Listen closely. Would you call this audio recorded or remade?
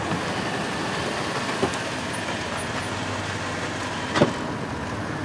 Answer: recorded